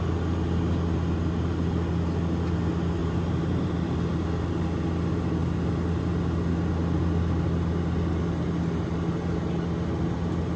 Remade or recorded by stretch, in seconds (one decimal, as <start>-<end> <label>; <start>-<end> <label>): 0.0-3.0 recorded; 3.0-3.7 remade; 3.7-10.6 recorded